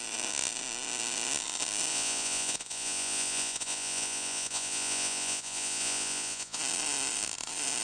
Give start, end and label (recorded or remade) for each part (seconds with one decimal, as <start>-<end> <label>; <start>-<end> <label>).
0.0-1.9 recorded; 1.9-6.6 remade; 6.6-7.8 recorded